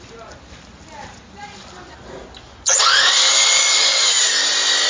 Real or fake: real